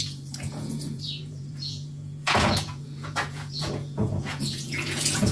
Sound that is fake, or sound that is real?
fake